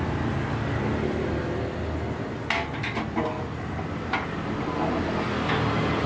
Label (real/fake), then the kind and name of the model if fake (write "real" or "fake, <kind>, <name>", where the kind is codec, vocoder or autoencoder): real